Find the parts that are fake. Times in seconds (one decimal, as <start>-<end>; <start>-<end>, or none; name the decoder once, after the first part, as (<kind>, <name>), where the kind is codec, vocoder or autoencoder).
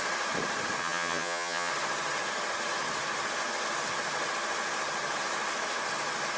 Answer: 0.8-1.7 (vocoder, HiFi-GAN)